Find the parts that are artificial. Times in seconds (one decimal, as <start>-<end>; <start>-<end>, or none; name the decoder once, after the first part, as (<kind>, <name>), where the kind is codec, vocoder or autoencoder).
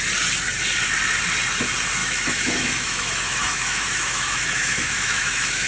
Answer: 2.0-5.7 (autoencoder, DAC-VAE)